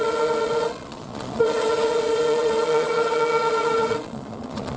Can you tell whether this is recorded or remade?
remade